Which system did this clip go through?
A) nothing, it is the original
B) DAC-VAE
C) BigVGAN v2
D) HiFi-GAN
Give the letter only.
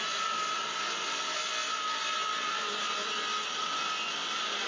A